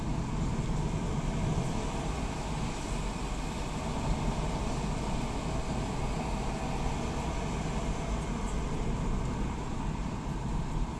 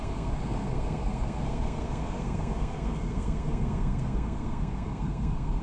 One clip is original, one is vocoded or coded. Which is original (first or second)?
first